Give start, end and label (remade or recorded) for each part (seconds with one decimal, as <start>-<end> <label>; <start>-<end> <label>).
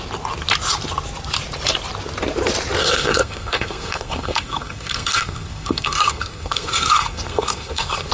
0.0-2.8 recorded; 2.8-8.1 remade